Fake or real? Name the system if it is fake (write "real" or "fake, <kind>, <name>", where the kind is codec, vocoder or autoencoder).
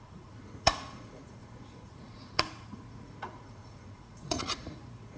fake, vocoder, Vocos